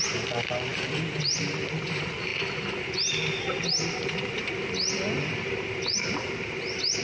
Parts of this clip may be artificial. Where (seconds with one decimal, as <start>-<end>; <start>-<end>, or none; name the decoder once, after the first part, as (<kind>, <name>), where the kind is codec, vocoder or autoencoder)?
0.0-0.7 (vocoder, BigVGAN v2); 1.2-7.0